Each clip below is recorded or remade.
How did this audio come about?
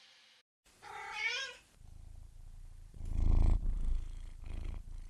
remade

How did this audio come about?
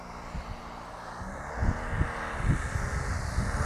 recorded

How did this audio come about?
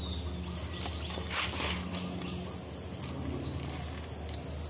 recorded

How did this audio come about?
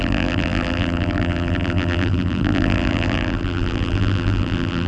remade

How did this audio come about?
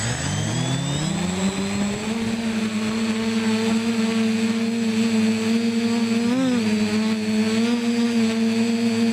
recorded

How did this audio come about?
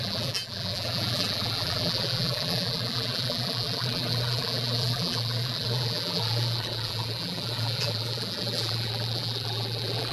remade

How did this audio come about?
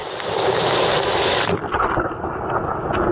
recorded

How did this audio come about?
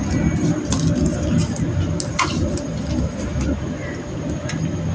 recorded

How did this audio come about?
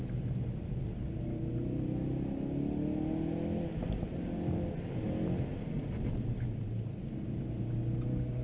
recorded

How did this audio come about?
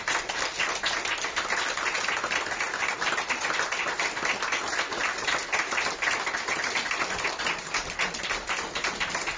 remade